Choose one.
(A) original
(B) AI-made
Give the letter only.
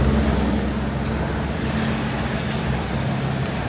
A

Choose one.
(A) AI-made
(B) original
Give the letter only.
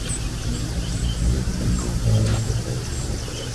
B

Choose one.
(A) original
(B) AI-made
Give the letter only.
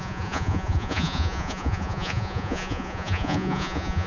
B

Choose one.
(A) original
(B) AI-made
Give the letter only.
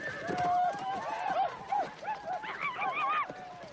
A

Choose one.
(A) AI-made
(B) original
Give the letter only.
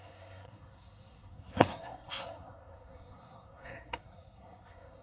A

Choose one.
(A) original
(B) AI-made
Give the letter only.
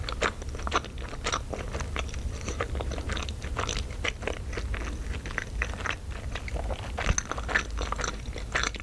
A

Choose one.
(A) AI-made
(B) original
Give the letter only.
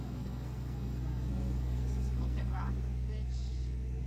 A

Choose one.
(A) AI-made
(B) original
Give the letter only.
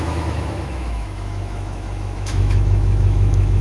A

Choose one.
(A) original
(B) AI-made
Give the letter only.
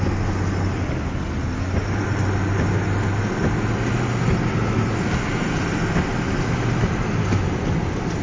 A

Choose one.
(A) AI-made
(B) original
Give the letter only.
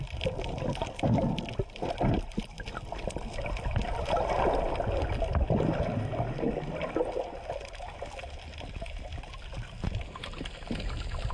B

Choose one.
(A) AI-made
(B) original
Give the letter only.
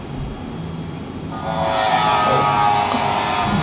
B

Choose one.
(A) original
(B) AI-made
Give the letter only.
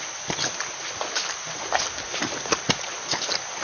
A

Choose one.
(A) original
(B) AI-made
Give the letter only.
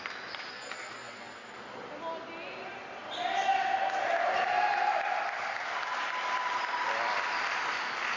A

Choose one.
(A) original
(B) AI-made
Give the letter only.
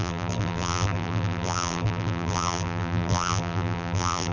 B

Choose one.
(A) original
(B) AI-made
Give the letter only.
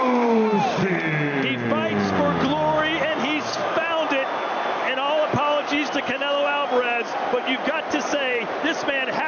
A